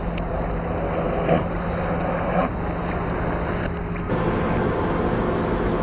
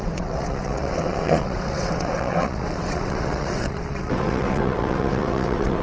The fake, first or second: second